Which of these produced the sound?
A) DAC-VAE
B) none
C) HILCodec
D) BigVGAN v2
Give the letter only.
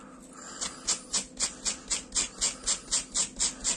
B